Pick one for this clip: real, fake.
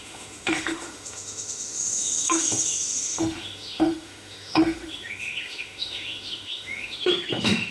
fake